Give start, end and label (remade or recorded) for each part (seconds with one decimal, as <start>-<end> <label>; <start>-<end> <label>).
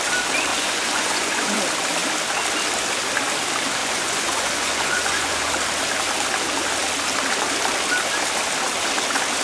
0.0-0.5 recorded; 0.5-1.6 remade; 1.6-3.8 recorded; 3.8-5.5 remade; 5.5-9.4 recorded